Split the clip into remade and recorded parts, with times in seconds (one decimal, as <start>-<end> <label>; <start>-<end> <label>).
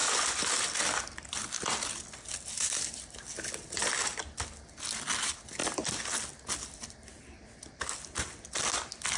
0.0-9.2 recorded